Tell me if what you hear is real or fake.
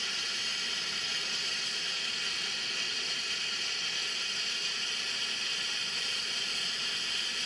fake